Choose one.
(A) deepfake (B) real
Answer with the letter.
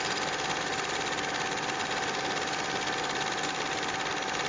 B